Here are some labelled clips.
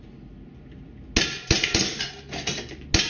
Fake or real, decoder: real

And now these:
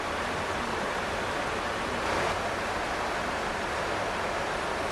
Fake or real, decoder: real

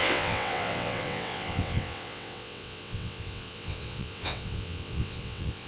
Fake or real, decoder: fake, vocoder, WaveNeXt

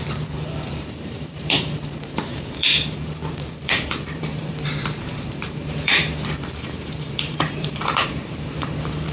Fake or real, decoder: fake, vocoder, BigVGAN v2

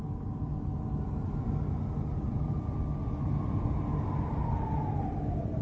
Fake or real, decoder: real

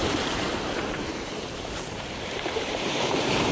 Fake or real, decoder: fake, vocoder, BigVGAN v2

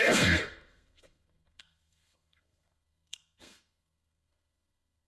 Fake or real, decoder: fake, codec, SNAC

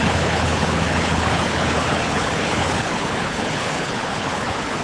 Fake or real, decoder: fake, codec, HILCodec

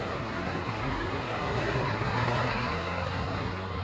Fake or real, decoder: fake, codec, SNAC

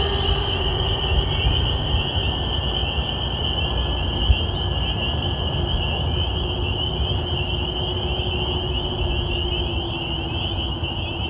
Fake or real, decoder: real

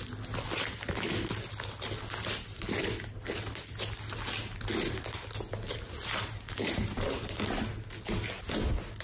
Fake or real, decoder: real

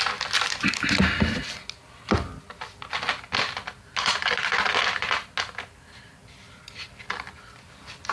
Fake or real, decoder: real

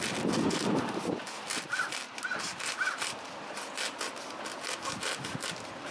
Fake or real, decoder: real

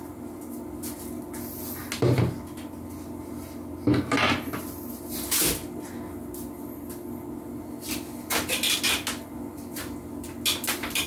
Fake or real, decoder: real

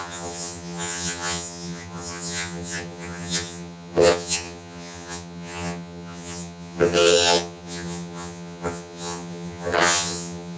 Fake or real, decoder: fake, vocoder, HiFi-GAN